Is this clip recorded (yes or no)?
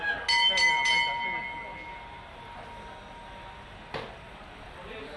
yes